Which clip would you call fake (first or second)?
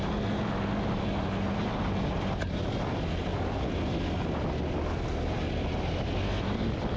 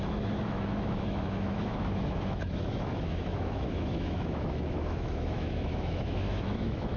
second